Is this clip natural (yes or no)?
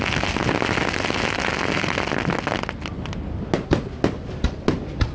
yes